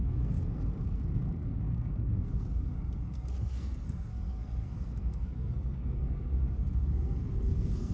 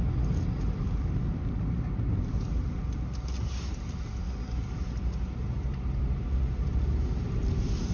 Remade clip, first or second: first